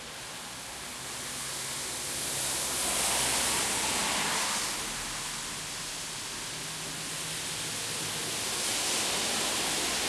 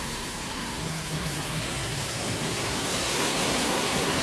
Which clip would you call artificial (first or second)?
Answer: second